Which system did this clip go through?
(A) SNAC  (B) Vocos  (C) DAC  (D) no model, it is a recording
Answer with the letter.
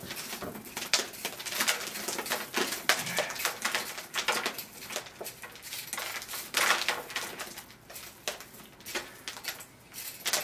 D